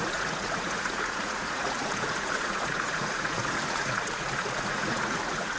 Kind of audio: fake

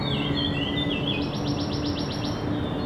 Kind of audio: real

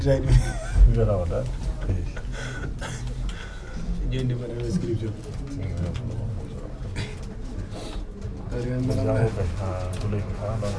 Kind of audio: real